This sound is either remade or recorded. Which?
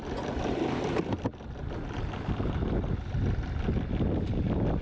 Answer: recorded